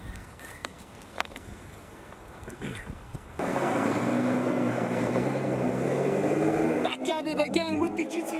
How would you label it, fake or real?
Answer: fake